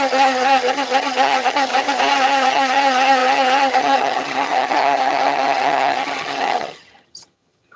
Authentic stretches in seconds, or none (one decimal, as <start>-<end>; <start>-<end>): 1.7-2.3